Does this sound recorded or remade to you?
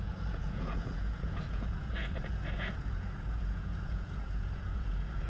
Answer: remade